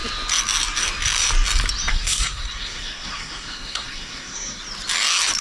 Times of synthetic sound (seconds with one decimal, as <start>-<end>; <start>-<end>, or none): 1.9-4.6